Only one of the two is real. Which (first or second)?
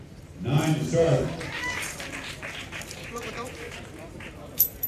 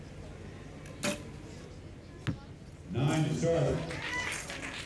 second